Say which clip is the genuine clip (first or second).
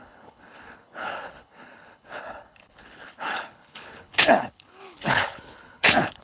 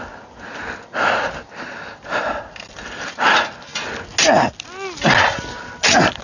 second